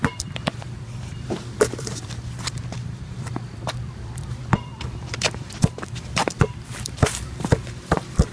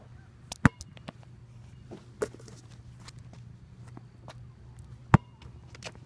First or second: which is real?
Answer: second